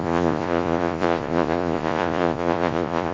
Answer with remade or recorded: remade